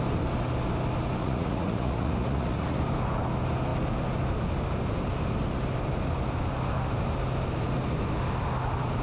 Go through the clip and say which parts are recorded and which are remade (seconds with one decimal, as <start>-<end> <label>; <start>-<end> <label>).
0.0-1.2 recorded; 1.2-2.8 remade; 2.8-9.0 recorded